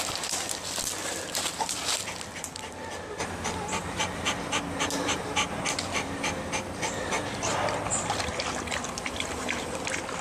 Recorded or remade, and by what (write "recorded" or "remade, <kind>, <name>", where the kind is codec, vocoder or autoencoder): remade, vocoder, BigVGAN v2